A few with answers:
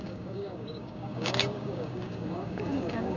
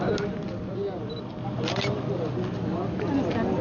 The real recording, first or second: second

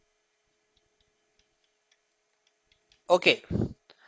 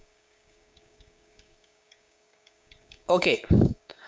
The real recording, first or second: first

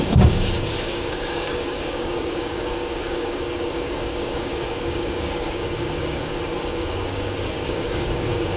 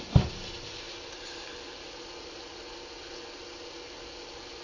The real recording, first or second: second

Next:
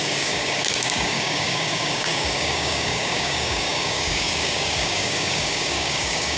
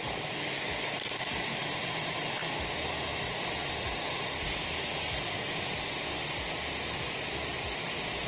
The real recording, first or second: second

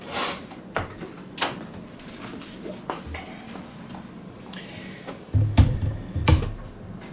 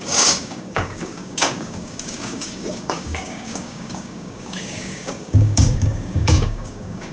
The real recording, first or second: first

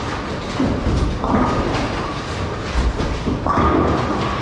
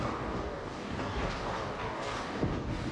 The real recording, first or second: first